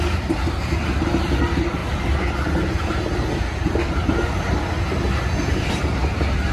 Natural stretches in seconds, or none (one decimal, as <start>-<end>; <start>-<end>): 0.0-6.5